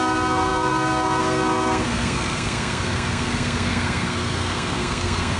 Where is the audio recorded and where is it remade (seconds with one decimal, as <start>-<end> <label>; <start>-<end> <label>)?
0.0-5.4 remade